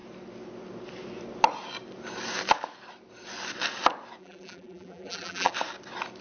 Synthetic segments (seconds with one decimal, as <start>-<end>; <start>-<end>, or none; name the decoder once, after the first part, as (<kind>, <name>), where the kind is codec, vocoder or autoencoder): 4.2-5.5 (vocoder, BigVGAN v2)